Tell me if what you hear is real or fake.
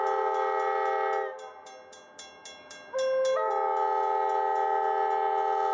real